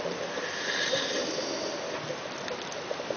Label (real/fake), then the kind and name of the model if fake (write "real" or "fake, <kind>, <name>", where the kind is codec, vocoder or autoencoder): real